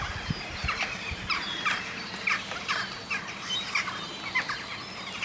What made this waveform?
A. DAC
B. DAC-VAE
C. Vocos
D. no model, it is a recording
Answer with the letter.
D